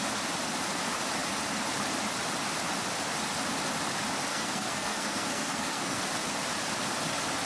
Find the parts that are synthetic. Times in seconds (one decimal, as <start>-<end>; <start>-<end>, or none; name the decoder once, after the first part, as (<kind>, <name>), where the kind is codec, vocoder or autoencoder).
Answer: 4.3-6.0 (codec, SNAC)